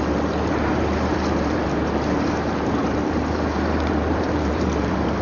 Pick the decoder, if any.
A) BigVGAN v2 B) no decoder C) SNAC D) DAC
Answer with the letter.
A